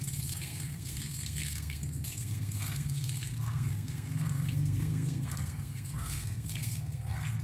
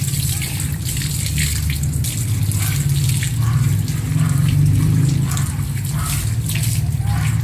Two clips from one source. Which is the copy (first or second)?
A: first